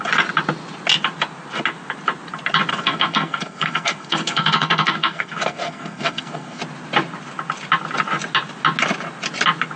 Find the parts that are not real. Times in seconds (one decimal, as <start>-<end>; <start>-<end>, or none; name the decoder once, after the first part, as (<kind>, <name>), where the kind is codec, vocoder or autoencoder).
2.7-6.6 (codec, SNAC)